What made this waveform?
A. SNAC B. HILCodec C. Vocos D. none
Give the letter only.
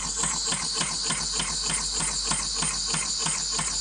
D